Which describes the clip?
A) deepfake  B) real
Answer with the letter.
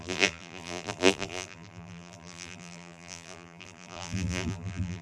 A